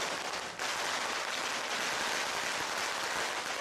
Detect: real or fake real